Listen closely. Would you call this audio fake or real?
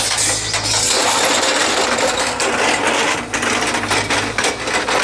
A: real